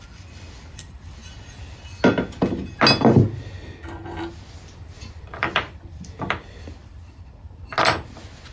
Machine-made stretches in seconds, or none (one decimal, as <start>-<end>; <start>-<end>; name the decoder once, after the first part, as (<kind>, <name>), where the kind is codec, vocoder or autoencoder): 0.0-1.2 (vocoder, BigVGAN v2); 5.2-6.8